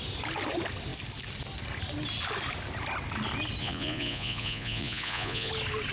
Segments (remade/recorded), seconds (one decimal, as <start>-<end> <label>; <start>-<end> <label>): 0.0-3.6 recorded; 3.6-5.5 remade; 5.5-5.9 recorded